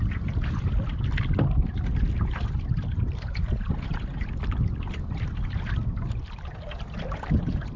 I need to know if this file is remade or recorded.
recorded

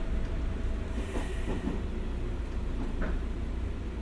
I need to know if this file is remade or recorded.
recorded